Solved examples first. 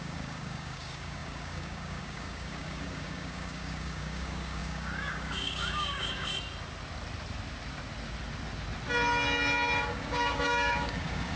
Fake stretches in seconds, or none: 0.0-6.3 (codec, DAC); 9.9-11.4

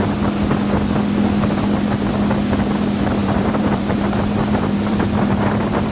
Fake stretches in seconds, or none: 3.2-4.0 (vocoder, BigVGAN v2); 4.4-5.9

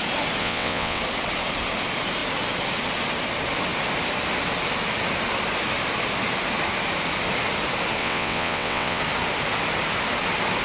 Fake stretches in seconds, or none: 0.4-1.0 (vocoder, WaveNeXt); 8.0-9.0

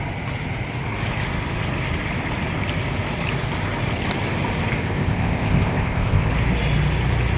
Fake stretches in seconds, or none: 4.8-6.3 (codec, ZipCodec)